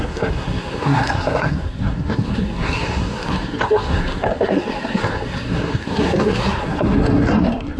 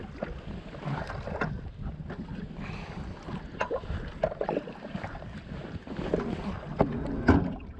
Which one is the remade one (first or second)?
first